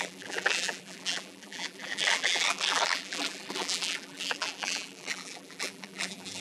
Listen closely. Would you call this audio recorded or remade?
remade